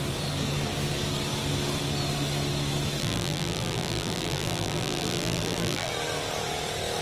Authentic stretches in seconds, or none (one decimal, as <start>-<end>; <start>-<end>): 0.0-3.0; 5.9-7.0